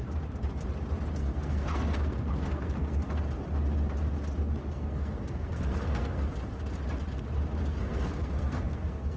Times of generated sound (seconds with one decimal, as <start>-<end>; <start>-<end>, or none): 1.2-3.2; 4.6-6.3; 7.6-9.2